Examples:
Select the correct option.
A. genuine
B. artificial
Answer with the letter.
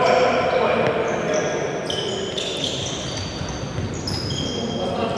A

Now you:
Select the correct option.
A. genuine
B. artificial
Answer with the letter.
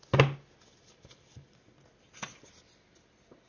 A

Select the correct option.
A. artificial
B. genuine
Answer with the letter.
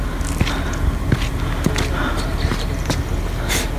B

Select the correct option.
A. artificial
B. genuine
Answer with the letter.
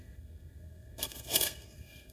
A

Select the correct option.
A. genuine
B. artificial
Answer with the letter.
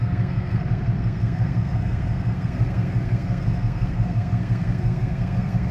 B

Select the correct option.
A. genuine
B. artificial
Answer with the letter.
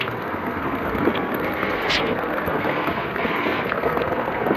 B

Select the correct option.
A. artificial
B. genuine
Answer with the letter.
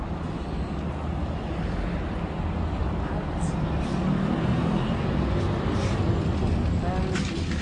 B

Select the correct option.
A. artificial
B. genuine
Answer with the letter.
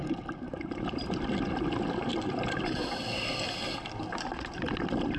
B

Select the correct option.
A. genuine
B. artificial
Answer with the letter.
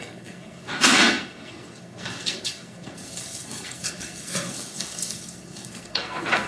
B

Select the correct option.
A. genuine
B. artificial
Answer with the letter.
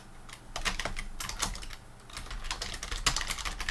A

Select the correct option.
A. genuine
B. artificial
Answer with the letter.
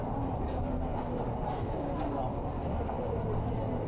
A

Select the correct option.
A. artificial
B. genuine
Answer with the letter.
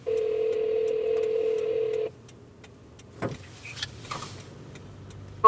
B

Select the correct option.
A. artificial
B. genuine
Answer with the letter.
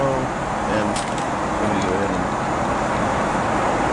B